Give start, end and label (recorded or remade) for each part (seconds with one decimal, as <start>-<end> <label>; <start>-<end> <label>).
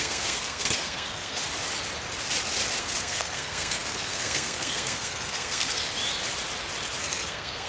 0.0-1.4 remade; 1.4-2.8 recorded; 2.8-5.8 remade; 5.8-7.0 recorded; 7.0-7.7 remade